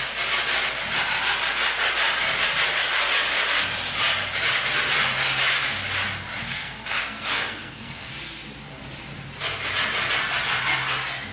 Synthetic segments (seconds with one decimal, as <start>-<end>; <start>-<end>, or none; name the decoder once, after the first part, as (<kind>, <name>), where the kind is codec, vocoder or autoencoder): 6.4-8.1 (codec, SNAC)